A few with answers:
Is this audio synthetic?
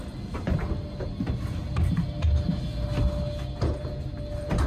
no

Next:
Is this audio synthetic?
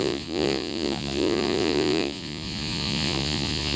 yes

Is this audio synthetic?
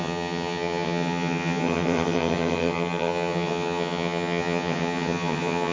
yes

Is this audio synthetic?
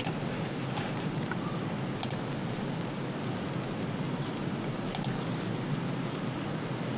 no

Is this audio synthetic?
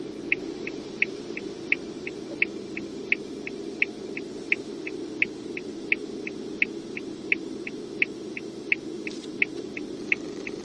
no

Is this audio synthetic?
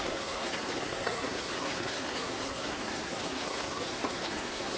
yes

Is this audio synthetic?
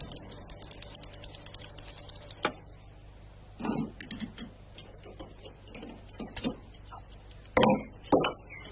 no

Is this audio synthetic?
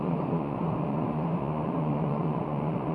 yes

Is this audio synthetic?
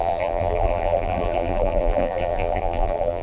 yes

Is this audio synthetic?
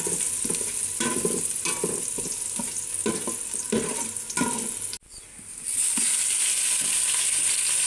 no